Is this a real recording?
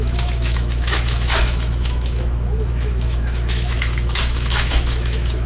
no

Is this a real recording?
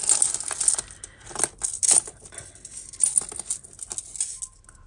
yes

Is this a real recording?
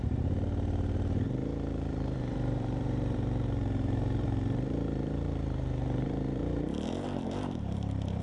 no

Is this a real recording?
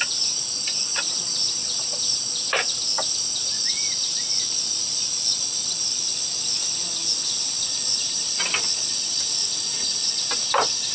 yes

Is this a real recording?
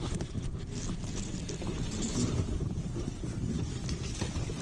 yes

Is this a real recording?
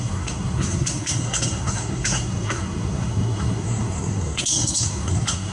no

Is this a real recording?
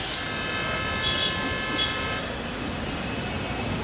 yes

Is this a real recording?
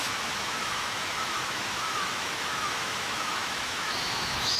no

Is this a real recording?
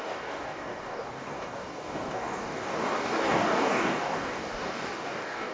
no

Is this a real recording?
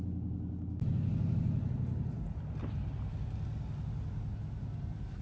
yes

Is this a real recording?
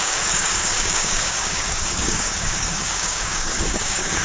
no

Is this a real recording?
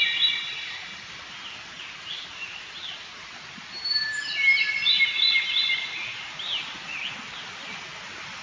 yes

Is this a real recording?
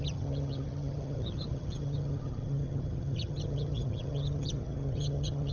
no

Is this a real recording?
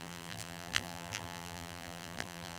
no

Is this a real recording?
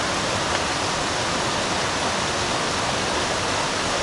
yes